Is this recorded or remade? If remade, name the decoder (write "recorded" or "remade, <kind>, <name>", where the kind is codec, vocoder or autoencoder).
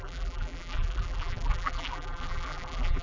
remade, vocoder, BigVGAN v2